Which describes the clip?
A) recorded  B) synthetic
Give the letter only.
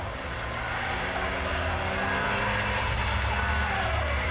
A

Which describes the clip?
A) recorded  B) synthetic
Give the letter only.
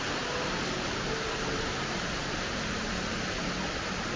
A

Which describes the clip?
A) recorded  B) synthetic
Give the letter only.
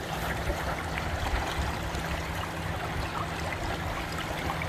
A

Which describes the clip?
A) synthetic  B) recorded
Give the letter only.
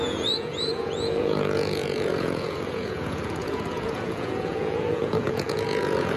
A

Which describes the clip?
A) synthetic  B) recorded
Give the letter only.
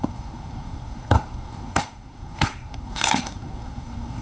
A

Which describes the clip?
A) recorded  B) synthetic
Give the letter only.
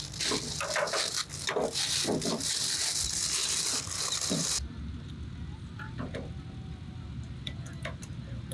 A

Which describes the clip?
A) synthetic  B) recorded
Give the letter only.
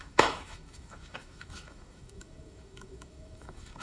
A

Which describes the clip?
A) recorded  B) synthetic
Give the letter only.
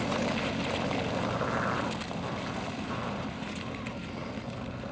A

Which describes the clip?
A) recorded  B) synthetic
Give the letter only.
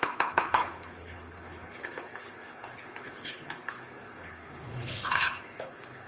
B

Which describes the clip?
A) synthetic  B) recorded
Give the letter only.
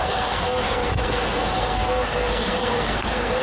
A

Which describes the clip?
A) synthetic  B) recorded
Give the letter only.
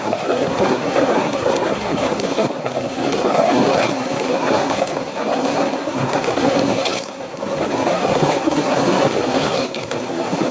A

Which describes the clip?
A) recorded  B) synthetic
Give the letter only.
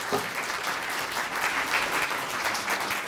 A